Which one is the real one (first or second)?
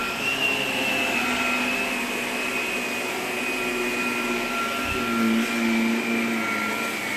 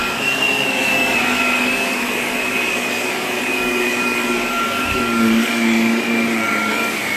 first